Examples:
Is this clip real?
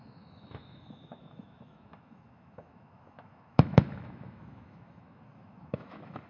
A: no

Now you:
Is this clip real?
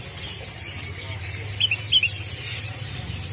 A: yes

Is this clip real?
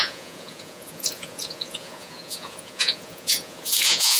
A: no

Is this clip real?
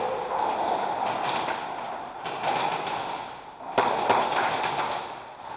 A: yes